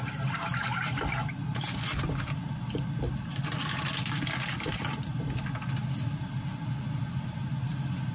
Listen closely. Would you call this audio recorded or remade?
recorded